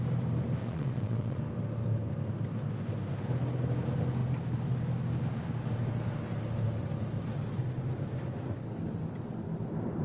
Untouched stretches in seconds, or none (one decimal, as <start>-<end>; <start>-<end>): 0.0-0.6; 1.4-10.0